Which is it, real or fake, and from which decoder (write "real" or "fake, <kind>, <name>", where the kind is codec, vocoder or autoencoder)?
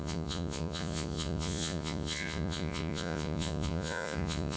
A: fake, vocoder, Vocos